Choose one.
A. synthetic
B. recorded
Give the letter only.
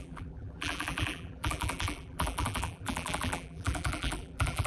A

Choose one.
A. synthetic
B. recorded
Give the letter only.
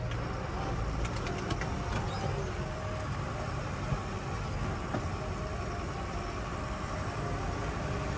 B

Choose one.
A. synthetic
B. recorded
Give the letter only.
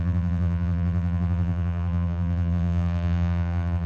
A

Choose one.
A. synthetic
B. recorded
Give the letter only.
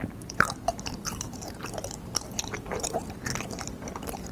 A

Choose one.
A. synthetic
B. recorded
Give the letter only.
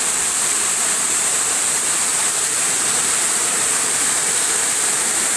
A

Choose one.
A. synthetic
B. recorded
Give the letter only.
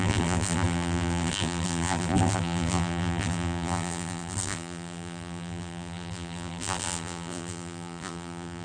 A